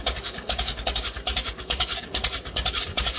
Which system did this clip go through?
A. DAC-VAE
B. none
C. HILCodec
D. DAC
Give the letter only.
D